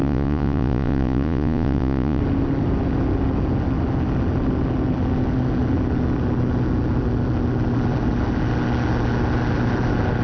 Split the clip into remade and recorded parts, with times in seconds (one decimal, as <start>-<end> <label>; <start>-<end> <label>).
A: 0.0-2.2 remade; 2.2-10.2 recorded